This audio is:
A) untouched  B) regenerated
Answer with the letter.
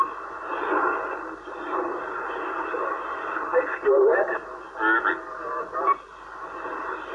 A